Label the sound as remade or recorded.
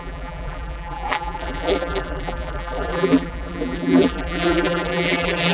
remade